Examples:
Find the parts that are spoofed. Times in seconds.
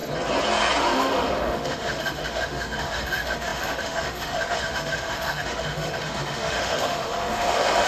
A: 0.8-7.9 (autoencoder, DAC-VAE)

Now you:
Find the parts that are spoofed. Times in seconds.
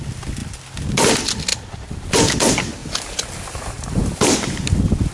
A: 1.5-2.1 (vocoder, BigVGAN v2); 2.8-4.0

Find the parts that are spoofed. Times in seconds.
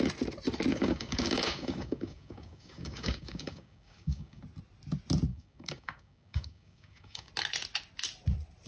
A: 0.7-4.4 (codec, DAC); 5.3-7.3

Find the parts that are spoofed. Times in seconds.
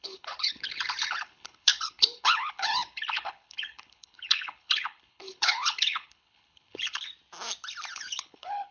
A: 0.0-7.1 (codec, HILCodec); 7.9-8.7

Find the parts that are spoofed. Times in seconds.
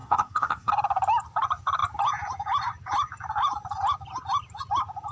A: 0.0-0.7 (codec, SNAC)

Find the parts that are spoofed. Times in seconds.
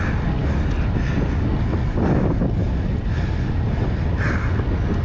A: none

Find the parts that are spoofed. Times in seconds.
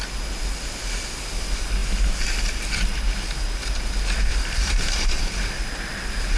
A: 4.3-5.3 (vocoder, BigVGAN v2)